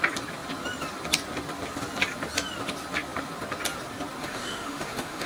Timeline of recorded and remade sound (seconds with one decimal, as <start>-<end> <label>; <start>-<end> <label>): 0.0-4.2 recorded; 4.2-5.3 remade